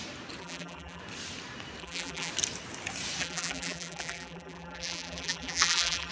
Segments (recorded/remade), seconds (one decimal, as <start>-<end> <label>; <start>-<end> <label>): 0.0-0.4 recorded; 0.4-1.0 remade; 1.0-1.8 recorded; 1.8-2.3 remade; 2.3-3.2 recorded; 3.2-6.1 remade